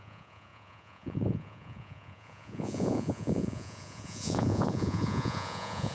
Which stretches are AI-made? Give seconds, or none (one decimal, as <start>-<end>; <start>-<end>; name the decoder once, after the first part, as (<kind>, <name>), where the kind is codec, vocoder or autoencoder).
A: 0.0-5.9 (vocoder, Vocos)